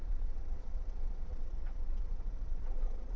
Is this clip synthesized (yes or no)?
yes